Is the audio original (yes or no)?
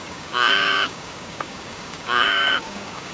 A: no